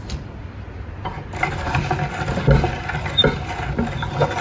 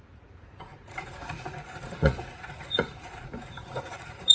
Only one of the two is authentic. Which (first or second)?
first